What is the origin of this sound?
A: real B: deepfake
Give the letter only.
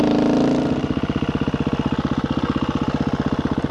A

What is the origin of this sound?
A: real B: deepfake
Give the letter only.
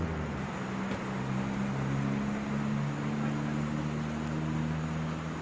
A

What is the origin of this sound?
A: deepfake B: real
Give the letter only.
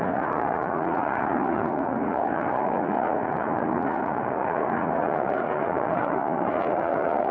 A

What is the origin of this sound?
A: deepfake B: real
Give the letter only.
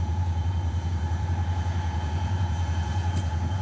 A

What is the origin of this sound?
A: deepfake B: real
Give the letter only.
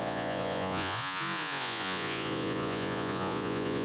A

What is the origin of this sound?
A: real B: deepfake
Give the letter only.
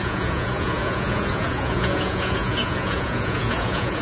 B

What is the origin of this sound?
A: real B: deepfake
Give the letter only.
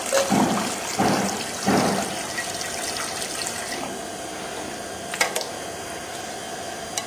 A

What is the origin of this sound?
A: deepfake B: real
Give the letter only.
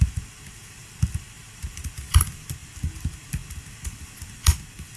B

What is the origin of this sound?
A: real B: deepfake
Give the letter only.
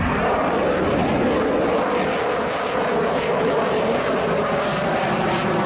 A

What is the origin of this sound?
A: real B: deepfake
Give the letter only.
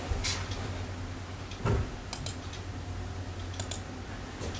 A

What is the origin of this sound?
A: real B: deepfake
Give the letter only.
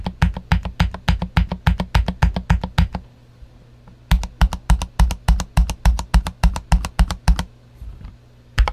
A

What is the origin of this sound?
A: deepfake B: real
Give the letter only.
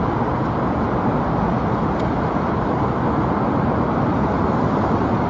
B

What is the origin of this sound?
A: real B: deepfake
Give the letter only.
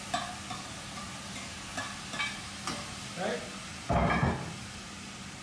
A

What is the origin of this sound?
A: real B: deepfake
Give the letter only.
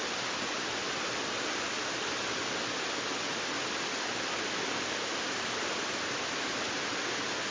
A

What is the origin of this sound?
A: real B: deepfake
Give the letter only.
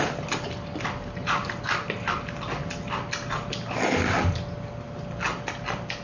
A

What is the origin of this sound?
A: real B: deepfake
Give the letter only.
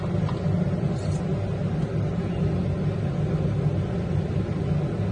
A